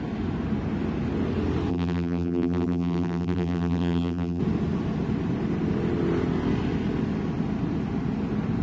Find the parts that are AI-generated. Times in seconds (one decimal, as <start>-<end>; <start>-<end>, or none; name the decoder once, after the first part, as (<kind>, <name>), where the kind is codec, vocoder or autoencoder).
1.7-4.4 (vocoder, BigVGAN v2)